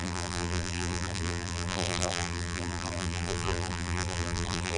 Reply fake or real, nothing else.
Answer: fake